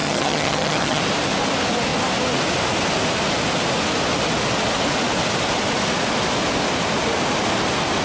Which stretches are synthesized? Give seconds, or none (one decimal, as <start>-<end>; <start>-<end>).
0.0-1.0

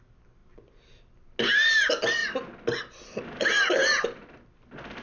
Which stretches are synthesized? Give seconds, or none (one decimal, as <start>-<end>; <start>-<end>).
none

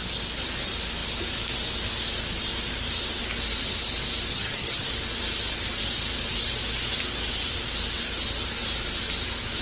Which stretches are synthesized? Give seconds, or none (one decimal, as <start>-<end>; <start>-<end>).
4.3-4.9

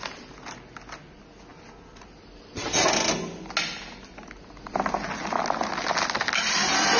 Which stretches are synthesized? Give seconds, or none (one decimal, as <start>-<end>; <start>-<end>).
none

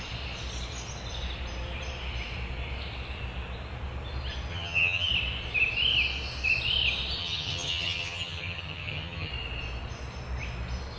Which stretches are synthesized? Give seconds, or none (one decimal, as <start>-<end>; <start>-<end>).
4.5-5.1; 7.2-9.3